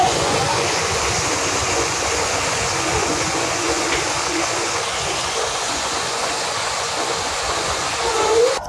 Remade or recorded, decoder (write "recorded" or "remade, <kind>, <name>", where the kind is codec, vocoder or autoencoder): remade, vocoder, Vocos